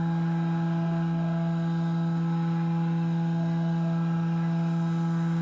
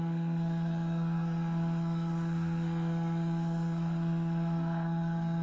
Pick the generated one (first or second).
second